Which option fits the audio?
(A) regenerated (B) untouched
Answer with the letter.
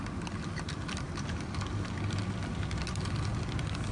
B